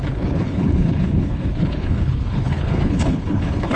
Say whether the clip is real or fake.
fake